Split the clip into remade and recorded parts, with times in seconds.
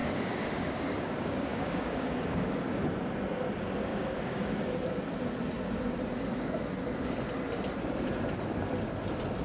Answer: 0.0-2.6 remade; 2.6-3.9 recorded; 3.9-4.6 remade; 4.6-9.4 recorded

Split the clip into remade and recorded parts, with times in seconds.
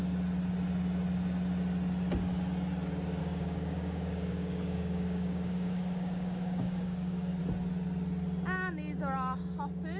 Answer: 0.0-3.2 recorded; 3.2-7.4 remade; 7.4-10.0 recorded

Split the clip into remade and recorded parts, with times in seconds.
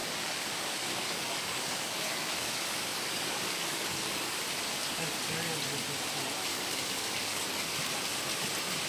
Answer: 0.0-4.4 remade; 4.4-6.5 recorded; 6.5-7.9 remade; 7.9-8.9 recorded